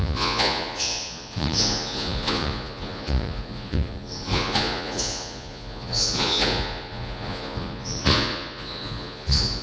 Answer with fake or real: fake